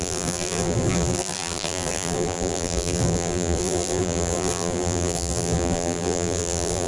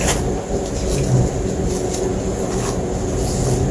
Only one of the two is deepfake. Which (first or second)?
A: first